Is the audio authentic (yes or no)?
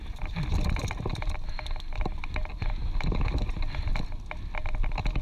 yes